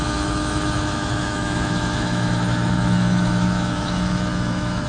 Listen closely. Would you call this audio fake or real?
fake